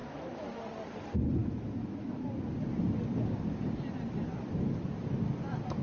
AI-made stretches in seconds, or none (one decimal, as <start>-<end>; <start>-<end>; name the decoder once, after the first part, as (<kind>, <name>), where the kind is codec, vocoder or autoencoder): 0.0-0.6 (autoencoder, DAC-VAE); 1.4-2.3